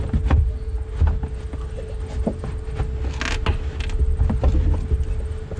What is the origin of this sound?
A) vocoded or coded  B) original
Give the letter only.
B